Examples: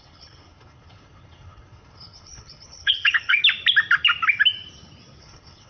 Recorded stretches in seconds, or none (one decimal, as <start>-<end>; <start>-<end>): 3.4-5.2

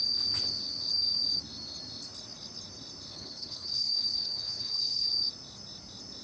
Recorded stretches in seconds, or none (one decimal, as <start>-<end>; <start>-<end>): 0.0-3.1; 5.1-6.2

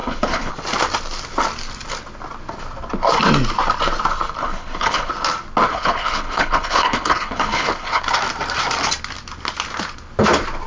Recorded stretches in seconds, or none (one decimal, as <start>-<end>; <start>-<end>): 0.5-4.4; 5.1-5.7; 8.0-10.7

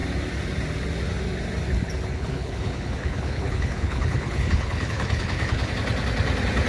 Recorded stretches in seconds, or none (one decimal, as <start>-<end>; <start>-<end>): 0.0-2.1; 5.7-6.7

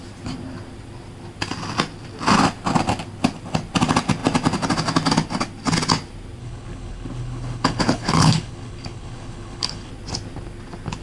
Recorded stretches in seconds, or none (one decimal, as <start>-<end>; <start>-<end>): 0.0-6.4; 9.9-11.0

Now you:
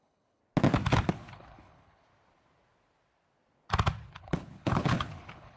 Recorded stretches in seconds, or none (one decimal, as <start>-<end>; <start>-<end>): 0.4-1.1; 2.1-4.1